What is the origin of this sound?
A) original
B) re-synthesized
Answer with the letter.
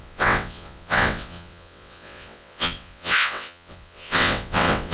B